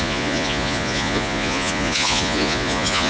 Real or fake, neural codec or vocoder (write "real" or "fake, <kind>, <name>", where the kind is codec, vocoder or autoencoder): fake, vocoder, Vocos